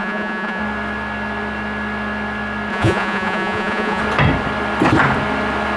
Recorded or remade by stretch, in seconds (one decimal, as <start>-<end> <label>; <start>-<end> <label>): 0.0-0.6 remade; 0.6-2.7 recorded; 2.7-4.0 remade; 4.0-5.8 recorded